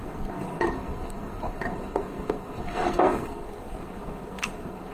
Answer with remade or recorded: remade